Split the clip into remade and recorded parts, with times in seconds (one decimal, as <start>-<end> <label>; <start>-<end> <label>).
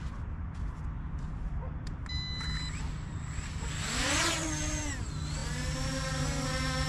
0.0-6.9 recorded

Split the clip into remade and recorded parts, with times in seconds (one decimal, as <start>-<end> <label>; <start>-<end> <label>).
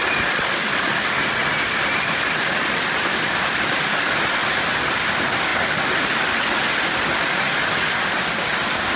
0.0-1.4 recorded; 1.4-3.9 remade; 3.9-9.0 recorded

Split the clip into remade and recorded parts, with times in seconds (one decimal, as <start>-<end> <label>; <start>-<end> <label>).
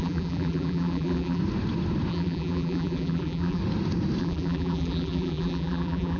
0.0-1.4 remade; 1.4-2.1 recorded; 2.1-3.6 remade; 3.6-4.2 recorded; 4.2-6.2 remade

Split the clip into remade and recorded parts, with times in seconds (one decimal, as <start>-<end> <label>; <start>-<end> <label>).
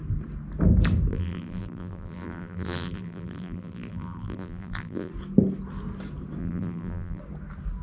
0.0-1.1 recorded; 1.1-5.1 remade; 5.1-6.4 recorded; 6.4-7.2 remade; 7.2-7.8 recorded